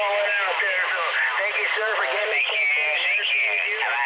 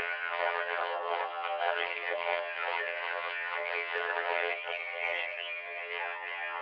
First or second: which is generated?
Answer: second